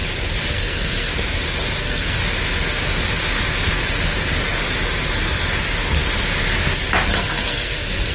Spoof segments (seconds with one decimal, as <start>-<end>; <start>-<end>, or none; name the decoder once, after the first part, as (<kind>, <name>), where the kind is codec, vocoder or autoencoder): 0.5-1.1 (codec, SNAC); 1.8-2.2; 7.1-8.1